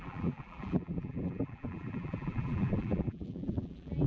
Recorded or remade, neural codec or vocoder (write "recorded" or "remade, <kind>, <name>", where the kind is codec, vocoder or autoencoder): remade, vocoder, BigVGAN v2